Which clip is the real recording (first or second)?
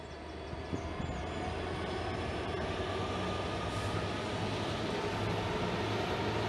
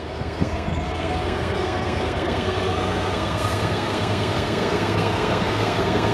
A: first